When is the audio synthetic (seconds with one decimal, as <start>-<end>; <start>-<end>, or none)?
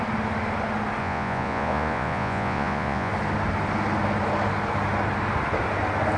1.0-3.1